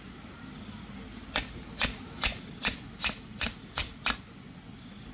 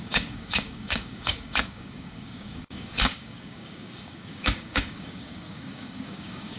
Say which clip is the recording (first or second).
first